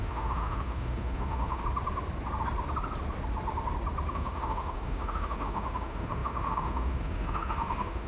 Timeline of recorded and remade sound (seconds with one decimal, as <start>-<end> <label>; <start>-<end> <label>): 0.0-1.6 remade; 1.6-4.1 recorded; 4.1-8.1 remade